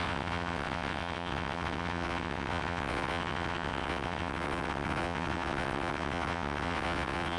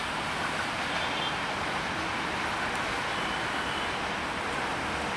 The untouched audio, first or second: second